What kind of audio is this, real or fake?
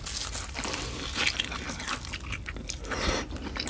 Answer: real